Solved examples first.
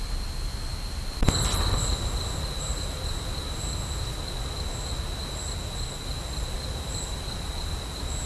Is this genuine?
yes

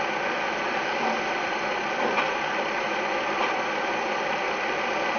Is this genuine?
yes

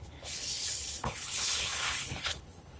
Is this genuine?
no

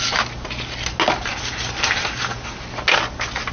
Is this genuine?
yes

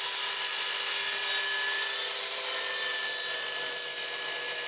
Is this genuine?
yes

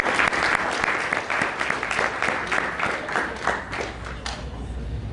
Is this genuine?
yes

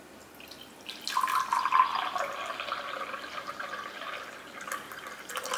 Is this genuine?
yes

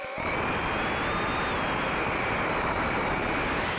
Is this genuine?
yes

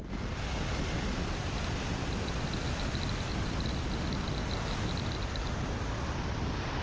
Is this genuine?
yes